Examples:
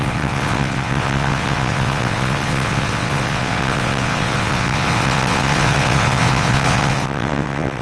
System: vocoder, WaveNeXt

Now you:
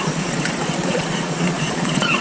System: vocoder, Vocos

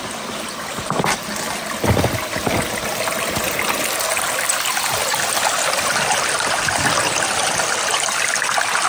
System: none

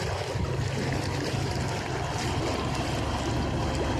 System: none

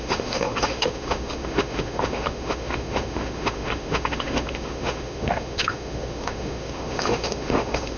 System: autoencoder, DAC-VAE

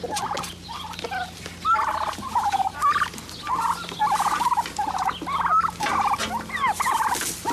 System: none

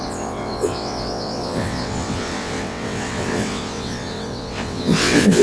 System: vocoder, WaveNeXt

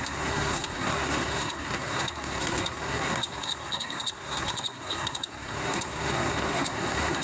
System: codec, SNAC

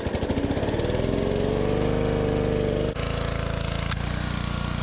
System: none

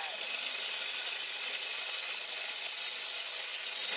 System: none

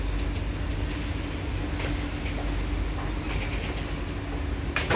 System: none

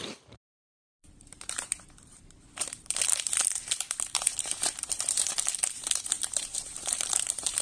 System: vocoder, BigVGAN v2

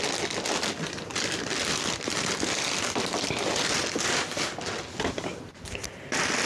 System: none